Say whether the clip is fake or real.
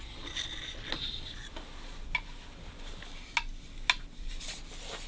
real